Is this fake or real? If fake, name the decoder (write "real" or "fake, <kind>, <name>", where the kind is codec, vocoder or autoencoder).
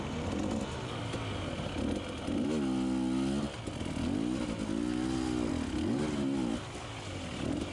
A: real